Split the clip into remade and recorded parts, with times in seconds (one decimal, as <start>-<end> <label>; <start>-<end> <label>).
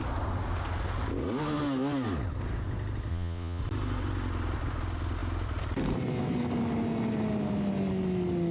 0.0-3.1 recorded; 3.1-3.6 remade; 3.6-8.5 recorded